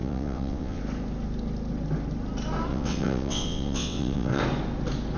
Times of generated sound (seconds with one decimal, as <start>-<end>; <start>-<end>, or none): 0.0-0.8; 2.7-4.4